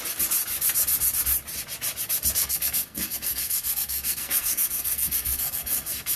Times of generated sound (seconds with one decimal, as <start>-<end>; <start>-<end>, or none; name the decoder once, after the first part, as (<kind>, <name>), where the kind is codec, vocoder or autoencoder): 2.4-6.2 (codec, SNAC)